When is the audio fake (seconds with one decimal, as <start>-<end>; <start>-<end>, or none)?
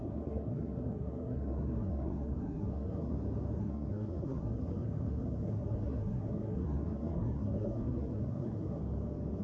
0.0-3.1; 3.6-8.8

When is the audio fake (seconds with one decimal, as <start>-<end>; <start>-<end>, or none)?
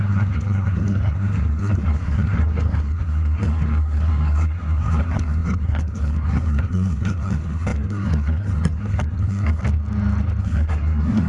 0.0-9.6; 10.4-11.3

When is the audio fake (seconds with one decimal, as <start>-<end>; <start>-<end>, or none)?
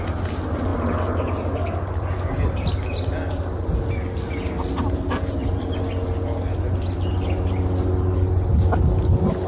none